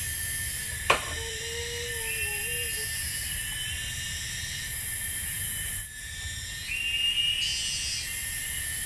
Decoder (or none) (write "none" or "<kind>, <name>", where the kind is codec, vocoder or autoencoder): none